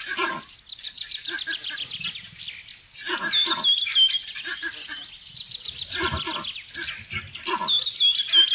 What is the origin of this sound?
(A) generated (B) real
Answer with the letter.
B